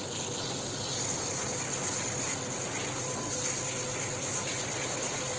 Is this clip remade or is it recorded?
recorded